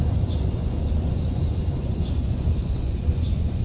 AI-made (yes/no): yes